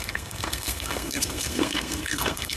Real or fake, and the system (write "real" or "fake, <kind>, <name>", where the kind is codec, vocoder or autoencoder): fake, codec, SNAC